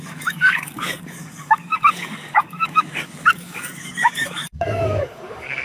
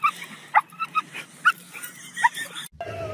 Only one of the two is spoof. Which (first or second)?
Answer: first